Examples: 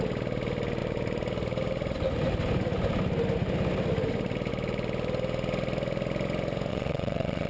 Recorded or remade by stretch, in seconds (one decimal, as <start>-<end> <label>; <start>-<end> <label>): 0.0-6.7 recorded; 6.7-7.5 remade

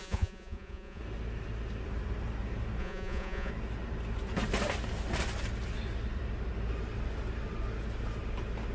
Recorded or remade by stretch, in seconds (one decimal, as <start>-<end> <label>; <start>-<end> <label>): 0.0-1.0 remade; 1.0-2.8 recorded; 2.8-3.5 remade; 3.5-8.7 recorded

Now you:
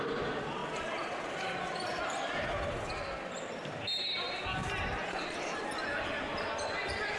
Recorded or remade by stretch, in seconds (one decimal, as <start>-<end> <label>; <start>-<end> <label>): 0.0-7.2 recorded

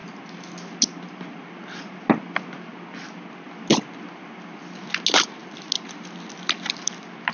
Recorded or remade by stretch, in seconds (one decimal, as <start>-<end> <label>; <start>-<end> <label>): 0.0-7.3 recorded

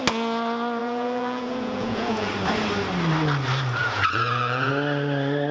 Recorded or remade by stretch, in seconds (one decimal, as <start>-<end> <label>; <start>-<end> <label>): 0.0-0.8 recorded; 0.8-2.3 remade; 2.3-3.8 recorded; 3.8-4.7 remade; 4.7-5.5 recorded

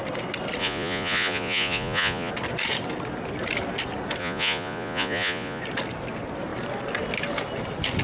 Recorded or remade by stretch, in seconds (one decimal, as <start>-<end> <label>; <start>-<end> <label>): 0.0-0.6 recorded; 0.6-2.3 remade; 2.3-4.2 recorded; 4.2-5.6 remade; 5.6-8.0 recorded